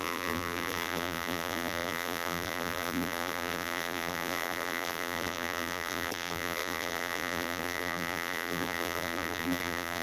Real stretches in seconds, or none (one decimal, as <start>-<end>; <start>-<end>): none